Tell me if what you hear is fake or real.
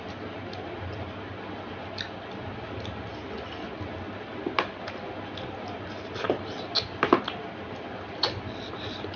real